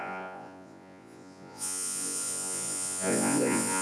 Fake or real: fake